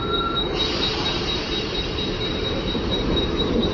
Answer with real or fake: fake